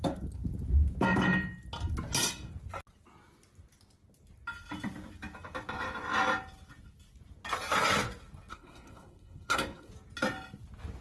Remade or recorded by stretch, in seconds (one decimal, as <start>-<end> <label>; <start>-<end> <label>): 0.0-8.5 recorded; 8.5-9.9 remade; 9.9-11.0 recorded